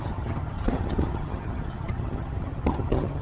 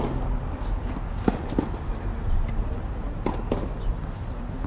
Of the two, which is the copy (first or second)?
first